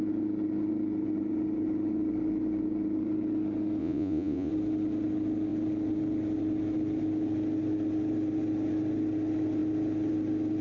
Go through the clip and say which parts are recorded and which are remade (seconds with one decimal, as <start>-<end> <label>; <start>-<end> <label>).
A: 0.0-3.8 recorded; 3.8-4.5 remade; 4.5-10.6 recorded